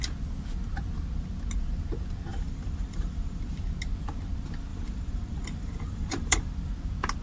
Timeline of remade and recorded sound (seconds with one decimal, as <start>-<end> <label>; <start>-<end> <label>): 0.0-2.3 recorded; 2.3-3.6 remade; 3.6-4.7 recorded; 4.7-6.5 remade; 6.5-7.2 recorded